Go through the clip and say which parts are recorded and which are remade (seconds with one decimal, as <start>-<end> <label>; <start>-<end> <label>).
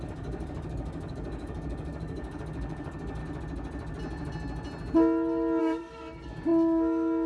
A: 0.0-3.2 remade; 3.2-5.6 recorded; 5.6-7.3 remade